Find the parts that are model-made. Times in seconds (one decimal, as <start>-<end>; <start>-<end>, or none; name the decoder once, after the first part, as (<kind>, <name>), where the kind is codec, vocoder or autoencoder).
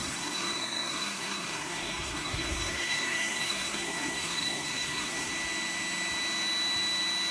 0.0-5.3 (codec, SNAC)